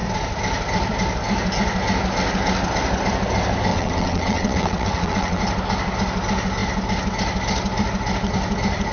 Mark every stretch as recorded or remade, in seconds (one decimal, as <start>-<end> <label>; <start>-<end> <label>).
0.0-3.7 recorded; 3.7-5.4 remade; 5.4-8.9 recorded